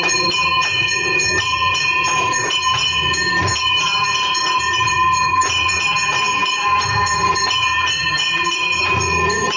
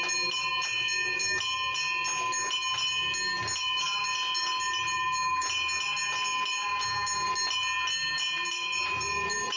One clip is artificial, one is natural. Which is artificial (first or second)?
first